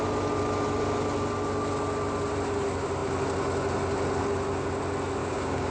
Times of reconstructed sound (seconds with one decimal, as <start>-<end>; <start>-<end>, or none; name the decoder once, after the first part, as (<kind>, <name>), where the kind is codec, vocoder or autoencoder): 5.2-5.7 (codec, DAC)